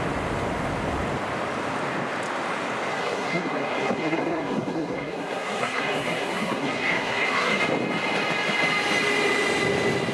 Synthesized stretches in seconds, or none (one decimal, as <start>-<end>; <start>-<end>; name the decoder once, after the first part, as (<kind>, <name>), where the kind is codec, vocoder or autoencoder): 2.9-7.6 (codec, SNAC)